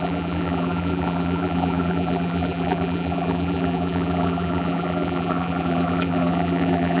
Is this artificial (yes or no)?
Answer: yes